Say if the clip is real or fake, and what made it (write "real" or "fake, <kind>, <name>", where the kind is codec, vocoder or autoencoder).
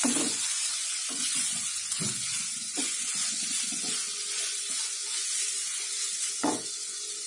fake, vocoder, Vocos